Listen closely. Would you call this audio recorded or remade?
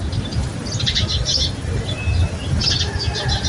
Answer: recorded